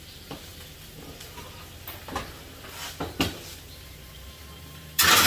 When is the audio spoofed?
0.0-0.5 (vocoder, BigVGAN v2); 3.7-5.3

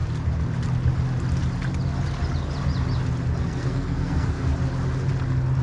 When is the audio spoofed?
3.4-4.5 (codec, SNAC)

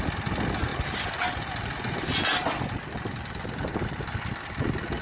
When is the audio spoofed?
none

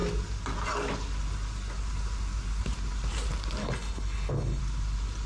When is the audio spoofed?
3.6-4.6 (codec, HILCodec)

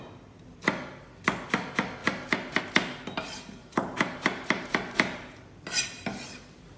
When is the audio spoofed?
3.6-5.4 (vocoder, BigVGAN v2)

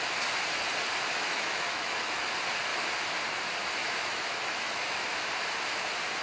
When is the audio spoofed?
1.1-2.2 (autoencoder, DAC-VAE); 3.8-5.3